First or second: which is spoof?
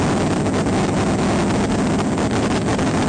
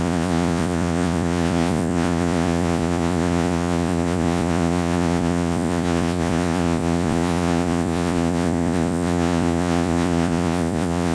second